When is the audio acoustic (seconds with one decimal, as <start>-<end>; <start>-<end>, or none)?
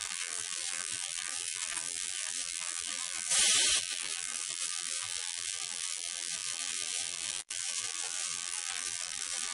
3.3-3.8